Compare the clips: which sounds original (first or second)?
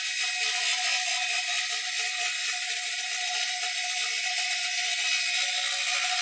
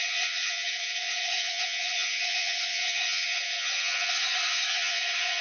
first